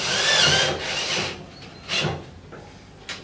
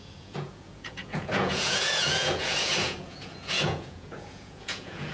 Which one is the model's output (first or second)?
second